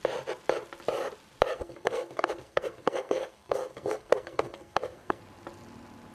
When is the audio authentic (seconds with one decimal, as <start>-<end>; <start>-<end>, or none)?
0.0-1.5; 5.2-6.1